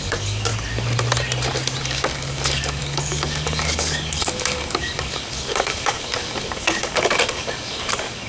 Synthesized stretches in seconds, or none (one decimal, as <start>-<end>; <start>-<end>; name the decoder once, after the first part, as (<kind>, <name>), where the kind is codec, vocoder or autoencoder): 0.0-0.5 (codec, DAC); 1.8-8.3